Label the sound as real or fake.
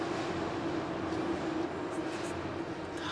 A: real